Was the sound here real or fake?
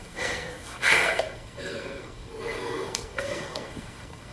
fake